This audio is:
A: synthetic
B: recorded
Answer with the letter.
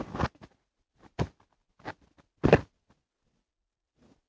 B